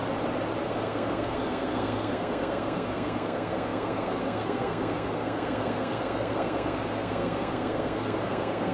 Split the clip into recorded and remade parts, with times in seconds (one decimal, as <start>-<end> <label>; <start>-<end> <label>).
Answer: 0.0-0.6 recorded; 0.6-8.7 remade

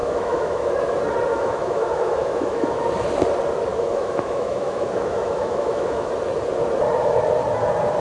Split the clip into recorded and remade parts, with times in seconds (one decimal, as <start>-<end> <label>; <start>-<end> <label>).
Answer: 0.0-0.7 remade; 0.7-1.3 recorded; 1.3-2.8 remade; 2.8-3.7 recorded; 3.7-6.1 remade; 6.1-8.0 recorded